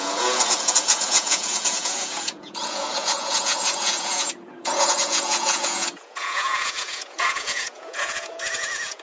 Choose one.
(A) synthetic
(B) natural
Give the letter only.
A